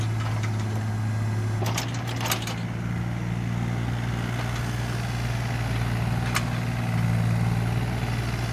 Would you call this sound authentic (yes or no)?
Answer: yes